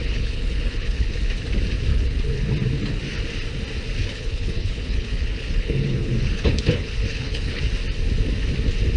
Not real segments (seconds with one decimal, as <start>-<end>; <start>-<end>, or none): 0.0-1.2; 1.9-2.5; 4.0-7.6